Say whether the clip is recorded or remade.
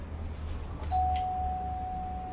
recorded